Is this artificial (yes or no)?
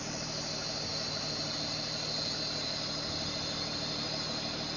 no